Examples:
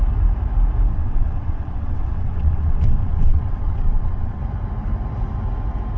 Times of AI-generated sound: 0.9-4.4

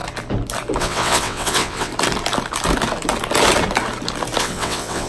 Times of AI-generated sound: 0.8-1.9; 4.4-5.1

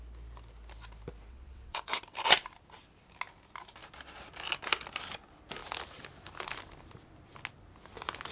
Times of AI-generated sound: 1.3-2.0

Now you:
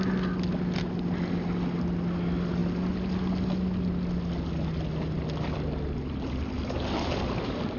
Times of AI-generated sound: none

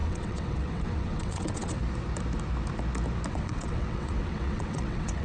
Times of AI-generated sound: 0.0-1.8; 3.3-5.2